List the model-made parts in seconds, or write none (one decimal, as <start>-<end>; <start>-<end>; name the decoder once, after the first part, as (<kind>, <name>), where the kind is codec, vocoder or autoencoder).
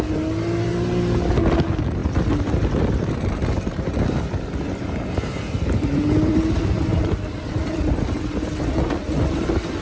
2.0-6.3 (vocoder, BigVGAN v2); 6.9-7.9